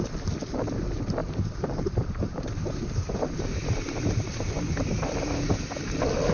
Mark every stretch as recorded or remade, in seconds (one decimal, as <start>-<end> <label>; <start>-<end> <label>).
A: 0.0-1.2 recorded; 1.2-4.7 remade; 4.7-6.3 recorded